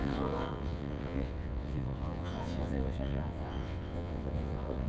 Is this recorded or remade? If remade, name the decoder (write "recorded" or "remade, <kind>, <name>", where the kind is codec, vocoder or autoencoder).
remade, vocoder, WaveNeXt